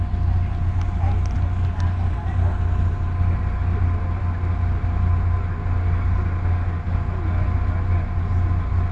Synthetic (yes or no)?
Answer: no